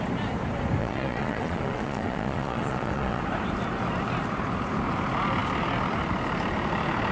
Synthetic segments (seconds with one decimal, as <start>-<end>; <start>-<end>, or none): 0.8-3.2

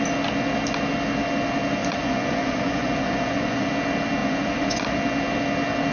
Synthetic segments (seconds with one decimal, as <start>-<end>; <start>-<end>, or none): 1.8-3.7; 4.2-5.0

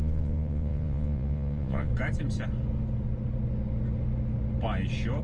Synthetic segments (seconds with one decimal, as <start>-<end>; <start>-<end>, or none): 0.0-1.9

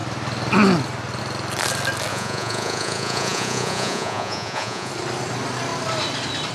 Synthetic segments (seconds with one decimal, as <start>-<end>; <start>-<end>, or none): 2.1-4.9